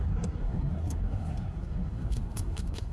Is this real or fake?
fake